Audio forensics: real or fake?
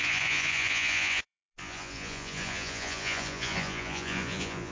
fake